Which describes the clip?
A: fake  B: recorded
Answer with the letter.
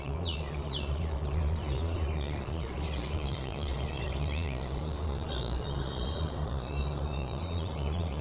A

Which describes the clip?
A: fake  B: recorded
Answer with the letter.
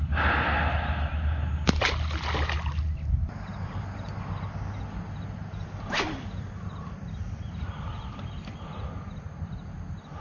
B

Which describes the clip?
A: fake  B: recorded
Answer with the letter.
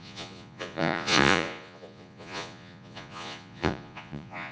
A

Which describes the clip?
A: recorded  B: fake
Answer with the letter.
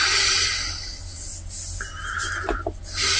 A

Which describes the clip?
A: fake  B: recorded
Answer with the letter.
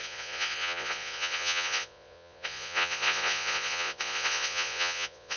A